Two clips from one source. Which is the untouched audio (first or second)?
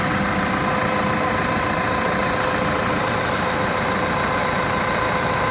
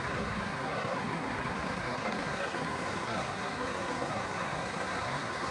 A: first